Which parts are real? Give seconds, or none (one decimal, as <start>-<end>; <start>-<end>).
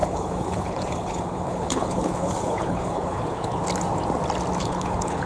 3.6-4.6